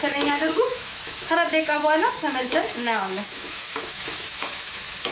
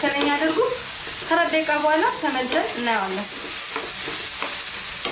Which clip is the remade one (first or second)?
first